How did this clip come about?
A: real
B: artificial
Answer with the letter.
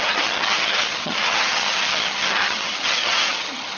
B